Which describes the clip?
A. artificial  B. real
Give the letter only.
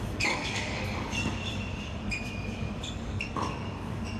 A